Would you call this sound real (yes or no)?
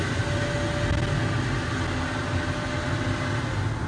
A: yes